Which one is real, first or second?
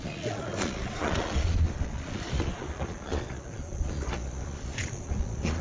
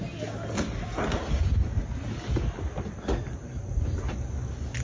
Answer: second